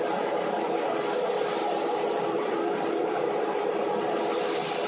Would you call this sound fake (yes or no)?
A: yes